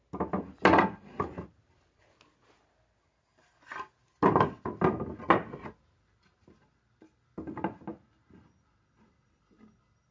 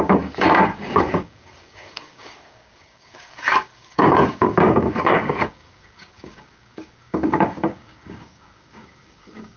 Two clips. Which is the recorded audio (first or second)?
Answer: first